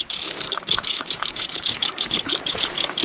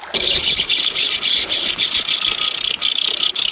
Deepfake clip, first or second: first